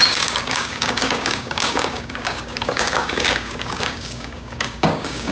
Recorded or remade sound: remade